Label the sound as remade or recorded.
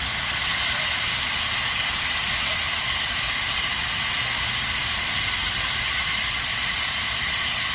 recorded